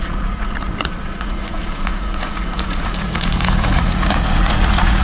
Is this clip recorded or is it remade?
remade